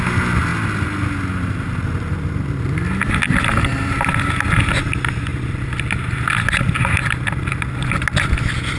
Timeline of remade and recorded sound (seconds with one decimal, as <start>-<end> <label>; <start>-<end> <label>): 0.0-8.8 recorded